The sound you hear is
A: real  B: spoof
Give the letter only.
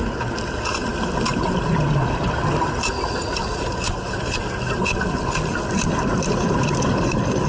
A